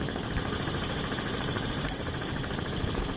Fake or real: fake